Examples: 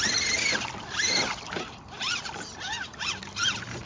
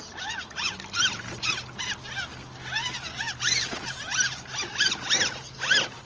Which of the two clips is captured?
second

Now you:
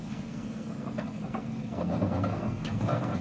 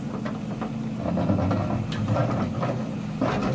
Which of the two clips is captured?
second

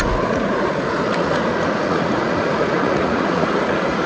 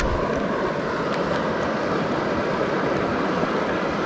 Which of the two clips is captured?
second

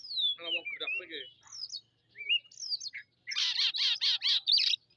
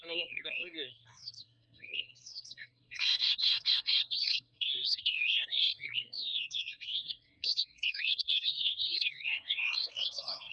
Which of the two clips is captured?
first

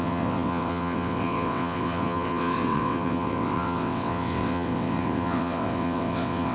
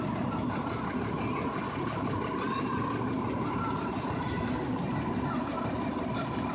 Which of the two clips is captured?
second